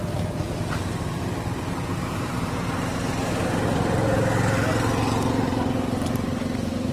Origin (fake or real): real